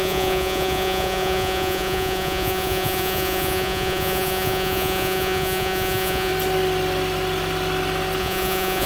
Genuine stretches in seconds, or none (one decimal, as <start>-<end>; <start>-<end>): 6.3-8.2